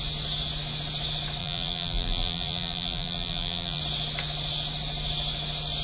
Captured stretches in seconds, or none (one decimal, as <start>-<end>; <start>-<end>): 0.0-1.4; 3.8-5.8